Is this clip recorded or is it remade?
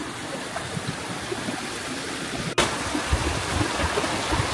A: recorded